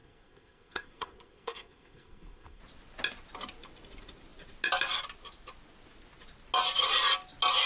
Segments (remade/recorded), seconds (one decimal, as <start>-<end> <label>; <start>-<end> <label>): 0.0-2.6 remade; 2.6-7.7 recorded